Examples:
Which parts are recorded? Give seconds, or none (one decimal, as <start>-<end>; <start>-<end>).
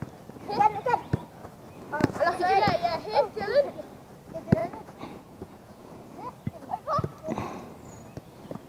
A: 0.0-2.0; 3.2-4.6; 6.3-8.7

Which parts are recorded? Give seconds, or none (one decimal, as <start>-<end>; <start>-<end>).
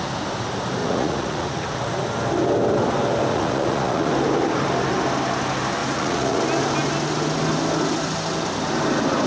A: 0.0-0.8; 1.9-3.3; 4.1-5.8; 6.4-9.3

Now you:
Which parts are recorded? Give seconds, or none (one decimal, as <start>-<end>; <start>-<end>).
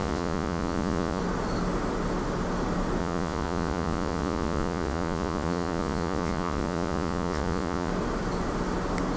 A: 1.2-3.0; 7.9-9.2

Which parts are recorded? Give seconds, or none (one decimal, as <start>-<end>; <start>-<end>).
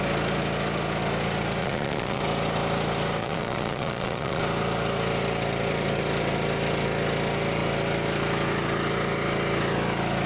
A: 0.0-1.6; 2.2-3.2; 4.4-10.3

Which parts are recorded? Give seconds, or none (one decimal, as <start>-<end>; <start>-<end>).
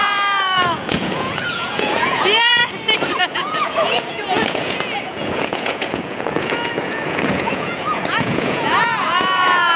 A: 2.6-3.2